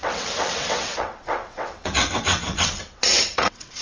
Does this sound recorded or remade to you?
remade